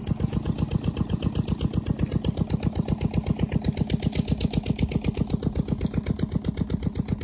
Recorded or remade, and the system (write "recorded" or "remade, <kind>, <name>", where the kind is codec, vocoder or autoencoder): recorded